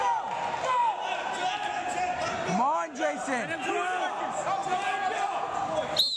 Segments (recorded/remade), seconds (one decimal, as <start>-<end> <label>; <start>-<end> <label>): 0.0-6.2 recorded